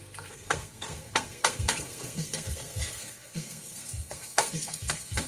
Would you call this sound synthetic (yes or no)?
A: yes